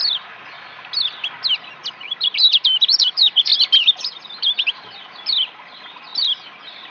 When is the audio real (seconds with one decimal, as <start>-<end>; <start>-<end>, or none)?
0.0-1.8; 6.1-6.9